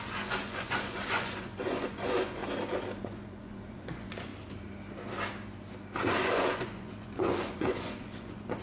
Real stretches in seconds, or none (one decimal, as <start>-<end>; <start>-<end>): 2.4-3.0; 4.3-6.1